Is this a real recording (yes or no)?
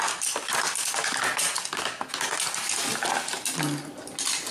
yes